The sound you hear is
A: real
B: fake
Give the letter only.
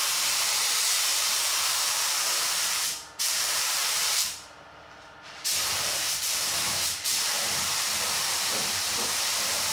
B